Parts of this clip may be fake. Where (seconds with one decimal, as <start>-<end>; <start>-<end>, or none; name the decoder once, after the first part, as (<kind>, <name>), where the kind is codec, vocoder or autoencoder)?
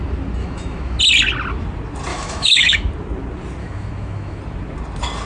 0.4-1.0 (autoencoder, DAC-VAE); 2.1-2.9; 3.6-4.4